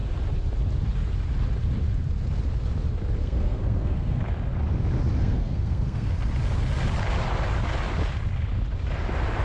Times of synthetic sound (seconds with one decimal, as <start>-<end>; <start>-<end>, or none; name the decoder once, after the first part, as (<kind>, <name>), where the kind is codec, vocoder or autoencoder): 3.2-4.2 (codec, SNAC); 5.2-6.1